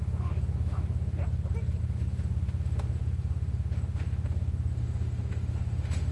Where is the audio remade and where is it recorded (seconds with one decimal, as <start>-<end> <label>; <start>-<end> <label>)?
0.0-1.2 remade; 1.2-1.8 recorded; 1.8-6.1 remade